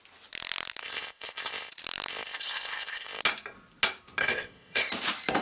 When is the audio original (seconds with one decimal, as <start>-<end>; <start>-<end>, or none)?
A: 0.0-0.8; 1.7-2.1; 3.2-4.2; 4.9-5.4